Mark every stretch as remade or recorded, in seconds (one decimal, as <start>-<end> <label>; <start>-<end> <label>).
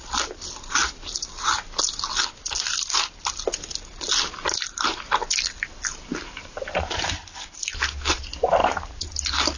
0.0-9.6 recorded